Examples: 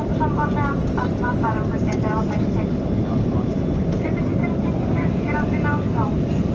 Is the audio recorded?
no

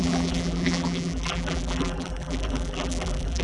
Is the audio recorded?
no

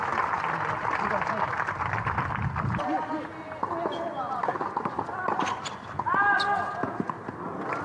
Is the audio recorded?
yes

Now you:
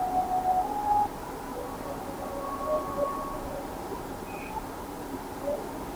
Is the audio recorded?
yes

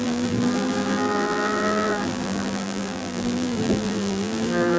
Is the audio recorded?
no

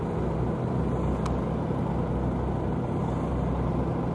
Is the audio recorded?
yes